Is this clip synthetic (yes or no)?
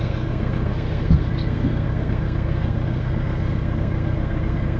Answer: yes